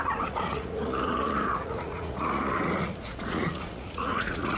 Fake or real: fake